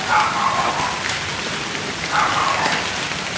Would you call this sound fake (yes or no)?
no